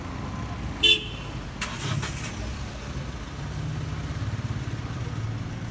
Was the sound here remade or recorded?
recorded